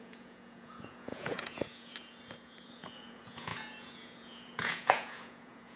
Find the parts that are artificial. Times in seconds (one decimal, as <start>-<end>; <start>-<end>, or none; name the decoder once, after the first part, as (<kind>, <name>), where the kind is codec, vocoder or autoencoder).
0.0-5.8 (vocoder, Vocos)